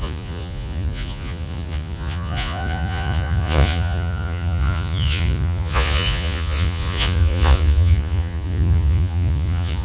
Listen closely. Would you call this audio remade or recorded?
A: remade